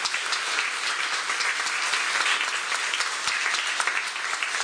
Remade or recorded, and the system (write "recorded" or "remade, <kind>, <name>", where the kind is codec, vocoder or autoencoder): recorded